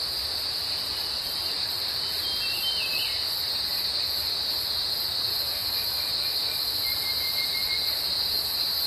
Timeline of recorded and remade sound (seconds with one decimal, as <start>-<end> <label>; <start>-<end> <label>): 0.0-5.6 recorded; 5.6-7.3 remade; 7.3-8.9 recorded